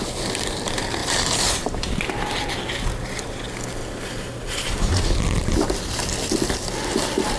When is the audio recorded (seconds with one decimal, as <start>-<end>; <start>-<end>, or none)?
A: 0.0-1.0; 2.1-3.8; 4.9-7.4